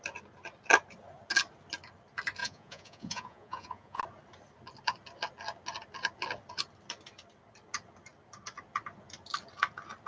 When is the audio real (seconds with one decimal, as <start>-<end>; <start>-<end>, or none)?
0.0-2.4; 4.0-10.1